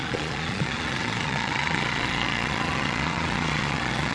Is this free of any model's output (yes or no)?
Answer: no